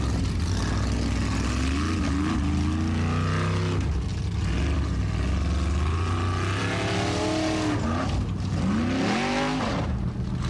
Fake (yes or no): no